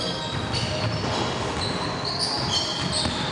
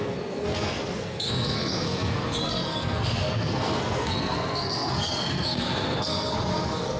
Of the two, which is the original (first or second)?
first